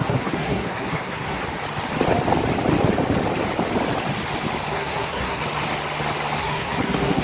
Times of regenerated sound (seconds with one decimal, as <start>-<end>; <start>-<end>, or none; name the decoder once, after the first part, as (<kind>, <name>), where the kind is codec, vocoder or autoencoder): 0.0-1.4 (codec, SNAC); 4.7-5.4; 6.4-7.2